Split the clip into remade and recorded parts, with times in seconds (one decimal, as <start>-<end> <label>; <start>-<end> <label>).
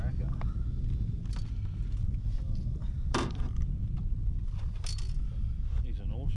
0.0-2.0 recorded; 2.0-5.8 remade; 5.8-6.4 recorded